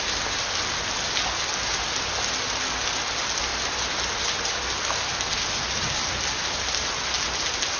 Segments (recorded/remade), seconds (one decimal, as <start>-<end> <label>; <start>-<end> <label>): 0.0-7.8 recorded